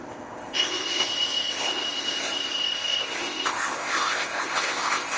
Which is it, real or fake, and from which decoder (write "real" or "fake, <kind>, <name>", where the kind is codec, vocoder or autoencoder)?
fake, codec, ZipCodec